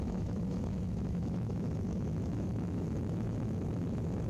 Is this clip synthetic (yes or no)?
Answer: yes